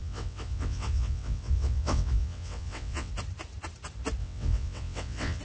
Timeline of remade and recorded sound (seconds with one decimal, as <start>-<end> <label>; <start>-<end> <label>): 0.0-3.1 remade; 3.1-4.2 recorded; 4.2-5.4 remade